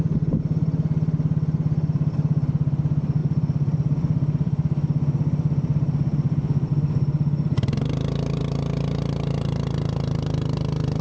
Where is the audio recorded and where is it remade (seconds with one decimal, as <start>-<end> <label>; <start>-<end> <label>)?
0.0-11.0 recorded